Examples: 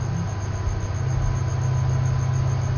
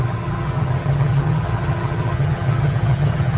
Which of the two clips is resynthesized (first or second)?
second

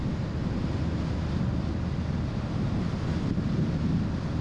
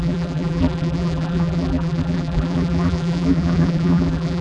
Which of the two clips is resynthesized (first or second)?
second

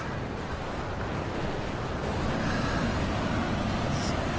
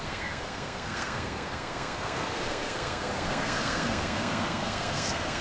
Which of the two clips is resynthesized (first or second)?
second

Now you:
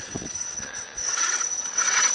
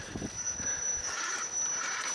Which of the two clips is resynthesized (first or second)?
first